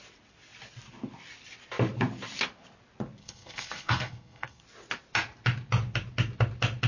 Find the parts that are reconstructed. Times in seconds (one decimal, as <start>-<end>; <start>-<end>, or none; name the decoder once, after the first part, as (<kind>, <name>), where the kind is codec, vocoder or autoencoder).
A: 3.2-4.6 (codec, SNAC)